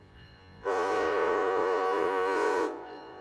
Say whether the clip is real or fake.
fake